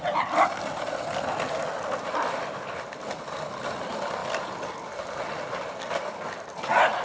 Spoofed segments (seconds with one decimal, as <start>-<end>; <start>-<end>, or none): none